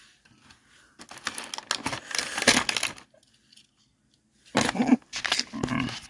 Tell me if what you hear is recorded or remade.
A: recorded